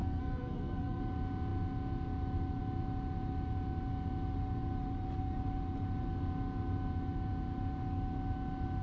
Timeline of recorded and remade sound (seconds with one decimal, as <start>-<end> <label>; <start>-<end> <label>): 0.0-1.0 remade; 1.0-8.8 recorded